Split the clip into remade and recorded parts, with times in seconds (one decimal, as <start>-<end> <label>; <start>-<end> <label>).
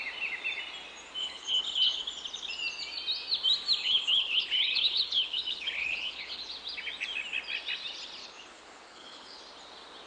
0.0-1.2 recorded; 1.2-2.0 remade; 2.0-3.8 recorded; 3.8-6.5 remade; 6.5-8.2 recorded; 8.2-9.4 remade; 9.4-10.1 recorded